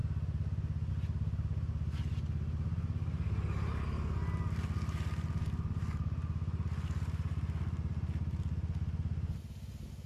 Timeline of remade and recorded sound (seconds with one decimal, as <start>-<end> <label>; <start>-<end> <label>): 0.0-10.1 recorded